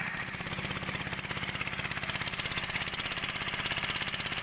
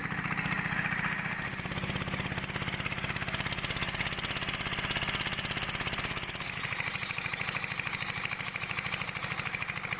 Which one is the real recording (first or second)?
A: second